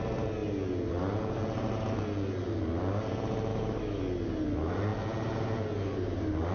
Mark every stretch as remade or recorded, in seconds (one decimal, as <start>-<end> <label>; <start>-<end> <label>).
0.0-3.5 recorded; 3.5-4.0 remade; 4.0-6.5 recorded